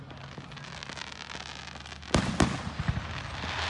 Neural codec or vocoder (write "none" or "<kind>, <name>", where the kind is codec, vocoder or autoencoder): none